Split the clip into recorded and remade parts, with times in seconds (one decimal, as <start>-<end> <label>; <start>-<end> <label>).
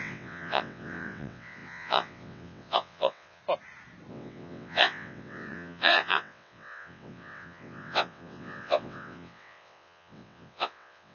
0.0-3.4 remade; 3.4-4.1 recorded; 4.1-11.1 remade